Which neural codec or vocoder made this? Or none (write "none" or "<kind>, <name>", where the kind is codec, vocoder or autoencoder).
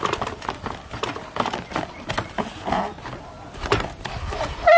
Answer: none